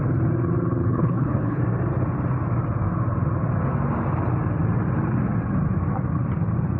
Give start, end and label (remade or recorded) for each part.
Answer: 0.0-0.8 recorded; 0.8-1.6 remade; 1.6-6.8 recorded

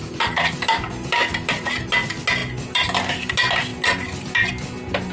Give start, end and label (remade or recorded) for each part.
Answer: 0.0-5.1 recorded

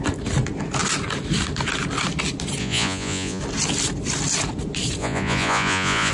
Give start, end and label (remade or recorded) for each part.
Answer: 0.0-2.6 recorded; 2.6-3.4 remade; 3.4-5.0 recorded; 5.0-6.1 remade